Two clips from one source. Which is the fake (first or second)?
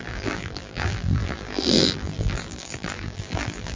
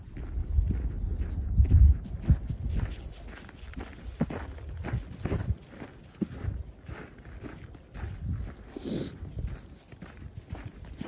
first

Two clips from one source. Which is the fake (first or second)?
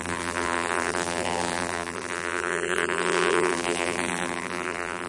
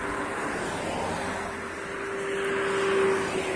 first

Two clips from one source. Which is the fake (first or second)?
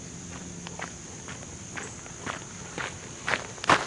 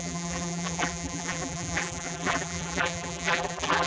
second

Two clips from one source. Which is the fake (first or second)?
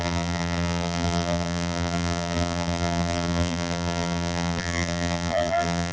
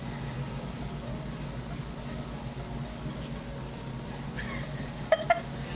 first